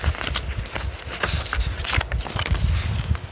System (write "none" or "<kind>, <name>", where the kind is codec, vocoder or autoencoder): none